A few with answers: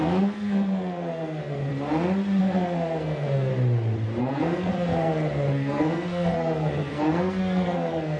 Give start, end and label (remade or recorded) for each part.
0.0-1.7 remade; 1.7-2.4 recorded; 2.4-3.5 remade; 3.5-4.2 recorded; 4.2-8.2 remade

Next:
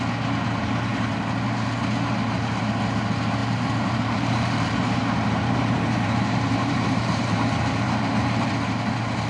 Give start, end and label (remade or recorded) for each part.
0.0-3.4 recorded; 3.4-8.5 remade; 8.5-9.3 recorded

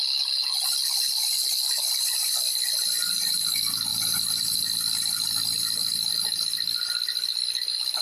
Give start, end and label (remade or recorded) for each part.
0.0-8.0 recorded

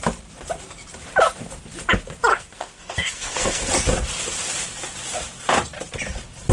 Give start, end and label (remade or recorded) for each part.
0.0-2.3 recorded; 2.3-3.7 remade; 3.7-6.5 recorded

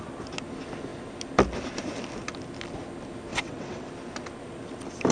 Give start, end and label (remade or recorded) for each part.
0.0-3.3 recorded; 3.3-3.9 remade; 3.9-5.1 recorded

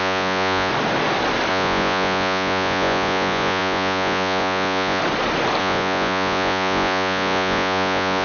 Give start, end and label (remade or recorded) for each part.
0.0-0.7 remade; 0.7-1.5 recorded; 1.5-5.0 remade; 5.0-5.6 recorded; 5.6-8.2 remade